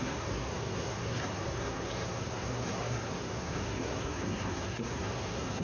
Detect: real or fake fake